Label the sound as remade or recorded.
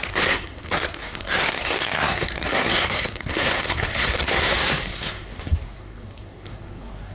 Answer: remade